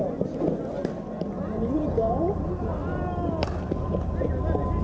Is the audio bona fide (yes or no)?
yes